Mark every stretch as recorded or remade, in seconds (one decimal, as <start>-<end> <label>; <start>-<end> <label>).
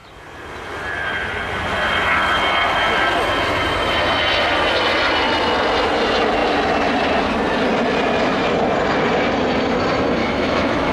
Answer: 0.0-10.2 recorded; 10.2-10.9 remade